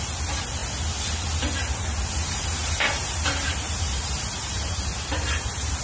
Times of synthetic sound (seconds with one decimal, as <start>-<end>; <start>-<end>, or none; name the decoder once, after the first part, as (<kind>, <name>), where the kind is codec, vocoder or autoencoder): 2.2-5.8 (vocoder, BigVGAN v2)